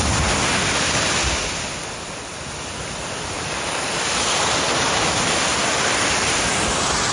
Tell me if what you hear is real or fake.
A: real